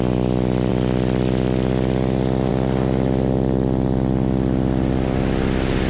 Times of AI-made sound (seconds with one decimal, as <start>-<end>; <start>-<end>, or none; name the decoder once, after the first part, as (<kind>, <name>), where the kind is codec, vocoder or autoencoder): none